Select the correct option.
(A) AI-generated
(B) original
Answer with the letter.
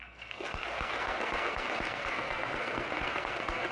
A